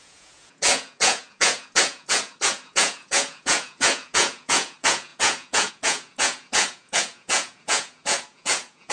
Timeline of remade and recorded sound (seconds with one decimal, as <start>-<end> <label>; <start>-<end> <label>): 0.0-8.9 remade